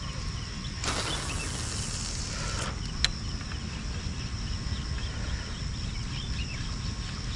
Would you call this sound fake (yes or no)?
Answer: no